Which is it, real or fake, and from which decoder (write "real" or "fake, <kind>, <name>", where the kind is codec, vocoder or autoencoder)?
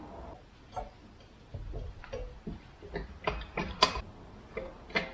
real